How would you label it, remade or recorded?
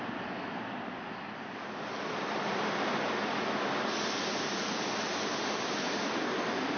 recorded